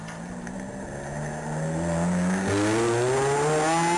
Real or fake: real